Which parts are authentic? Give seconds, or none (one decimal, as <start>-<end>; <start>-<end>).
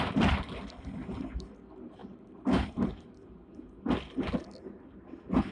0.0-2.0; 2.9-5.5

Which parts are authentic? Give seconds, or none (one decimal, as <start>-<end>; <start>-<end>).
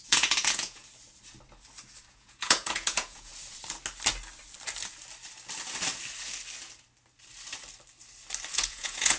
0.8-2.1; 3.3-8.5